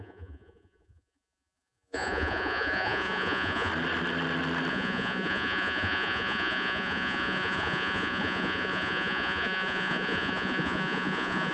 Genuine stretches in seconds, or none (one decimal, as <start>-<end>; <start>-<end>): 3.7-4.7